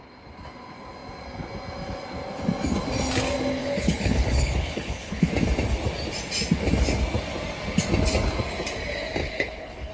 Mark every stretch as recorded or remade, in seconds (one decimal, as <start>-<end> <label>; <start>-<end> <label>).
0.0-3.6 recorded; 3.6-5.3 remade; 5.3-9.2 recorded; 9.2-9.9 remade